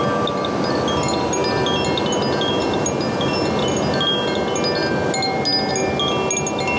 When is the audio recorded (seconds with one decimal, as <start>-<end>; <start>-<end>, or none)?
0.0-6.8